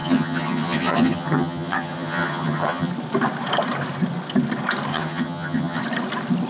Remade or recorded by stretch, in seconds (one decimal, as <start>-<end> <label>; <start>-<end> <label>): 0.0-2.9 remade; 2.9-4.9 recorded; 4.9-5.8 remade; 5.8-6.5 recorded